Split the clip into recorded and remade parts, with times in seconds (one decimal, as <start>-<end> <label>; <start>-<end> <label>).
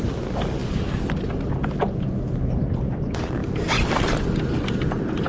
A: 0.0-3.4 recorded; 3.4-4.0 remade; 4.0-5.3 recorded